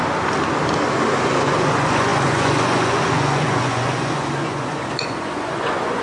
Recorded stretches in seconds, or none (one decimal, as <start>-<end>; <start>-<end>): 0.0-1.2